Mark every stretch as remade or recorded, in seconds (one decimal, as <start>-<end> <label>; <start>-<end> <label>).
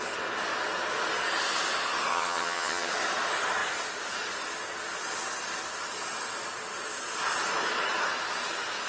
0.0-2.1 recorded; 2.1-2.9 remade; 2.9-8.9 recorded